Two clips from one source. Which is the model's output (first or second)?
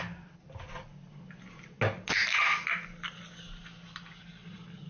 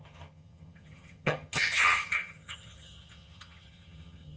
second